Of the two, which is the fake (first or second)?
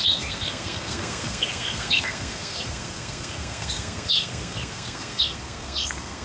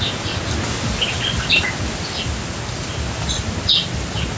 first